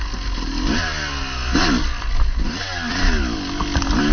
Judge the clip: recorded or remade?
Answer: recorded